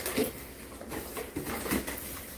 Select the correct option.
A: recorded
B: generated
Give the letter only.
A